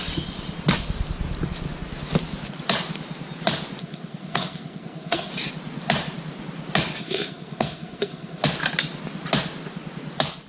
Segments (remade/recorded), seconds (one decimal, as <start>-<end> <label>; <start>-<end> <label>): 0.0-3.8 recorded; 3.8-5.3 remade; 5.3-7.0 recorded; 7.0-8.4 remade; 8.4-10.5 recorded